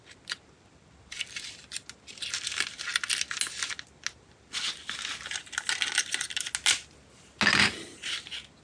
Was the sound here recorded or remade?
recorded